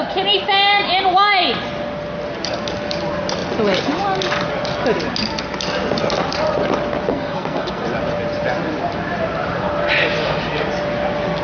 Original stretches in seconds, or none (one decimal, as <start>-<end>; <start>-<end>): 0.0-7.1; 7.8-11.4